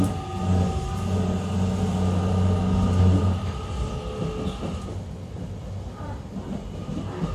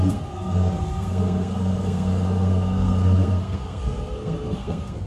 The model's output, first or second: second